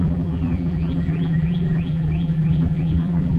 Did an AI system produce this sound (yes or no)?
yes